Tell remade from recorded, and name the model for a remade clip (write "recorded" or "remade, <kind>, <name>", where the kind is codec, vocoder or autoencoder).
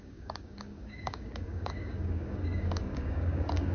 remade, codec, DAC